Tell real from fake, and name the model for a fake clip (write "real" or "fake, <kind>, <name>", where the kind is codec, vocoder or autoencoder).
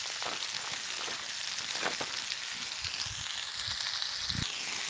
real